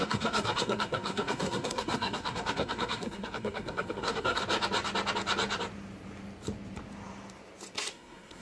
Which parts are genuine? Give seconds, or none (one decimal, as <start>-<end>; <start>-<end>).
4.4-7.9

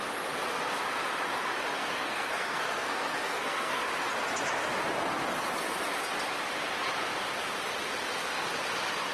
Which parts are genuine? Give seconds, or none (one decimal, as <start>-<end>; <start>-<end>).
0.0-1.7; 3.8-9.1